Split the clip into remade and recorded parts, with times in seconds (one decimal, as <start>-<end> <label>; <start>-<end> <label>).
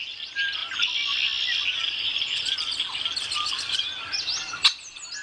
0.0-5.2 recorded